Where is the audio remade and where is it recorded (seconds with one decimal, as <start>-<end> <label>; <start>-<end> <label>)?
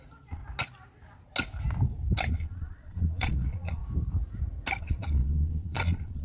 0.0-0.4 remade; 0.4-2.3 recorded; 2.3-3.8 remade; 3.8-4.8 recorded; 4.8-6.2 remade